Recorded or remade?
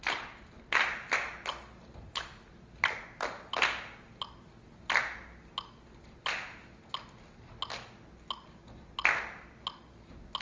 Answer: recorded